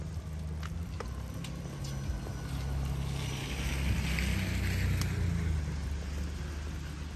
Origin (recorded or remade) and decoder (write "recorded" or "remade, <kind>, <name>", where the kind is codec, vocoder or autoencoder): recorded